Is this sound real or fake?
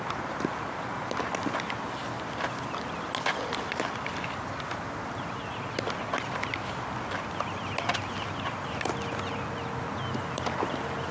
real